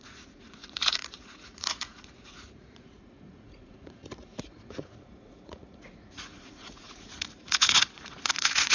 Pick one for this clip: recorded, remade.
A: remade